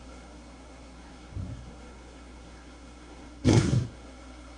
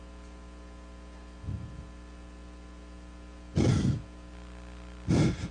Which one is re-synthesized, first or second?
first